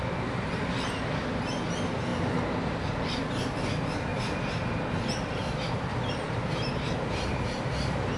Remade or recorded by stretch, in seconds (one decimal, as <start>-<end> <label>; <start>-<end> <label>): 0.0-2.1 recorded; 2.1-2.8 remade; 2.8-4.1 recorded; 4.1-8.2 remade